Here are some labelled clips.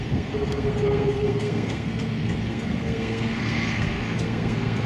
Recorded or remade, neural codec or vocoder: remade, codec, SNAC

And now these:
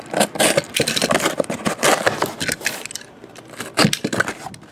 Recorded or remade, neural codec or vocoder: recorded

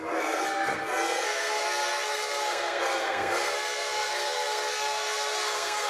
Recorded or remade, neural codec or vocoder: remade, codec, SNAC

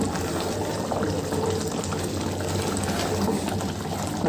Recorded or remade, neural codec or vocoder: recorded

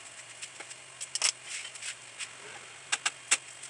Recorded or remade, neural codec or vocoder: recorded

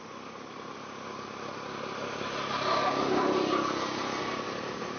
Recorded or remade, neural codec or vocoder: recorded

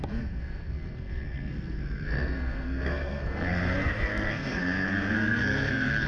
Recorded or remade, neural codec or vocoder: remade, codec, SNAC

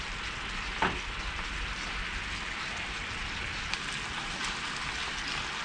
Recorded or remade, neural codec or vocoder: recorded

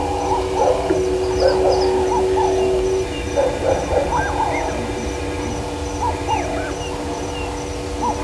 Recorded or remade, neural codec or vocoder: recorded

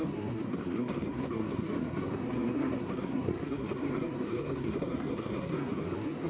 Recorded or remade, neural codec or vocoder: remade, codec, SNAC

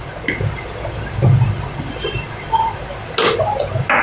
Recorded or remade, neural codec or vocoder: recorded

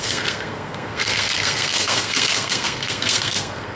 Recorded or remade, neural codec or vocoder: remade, codec, SNAC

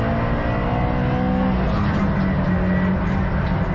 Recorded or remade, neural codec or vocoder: recorded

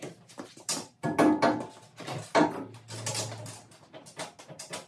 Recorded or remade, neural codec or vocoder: recorded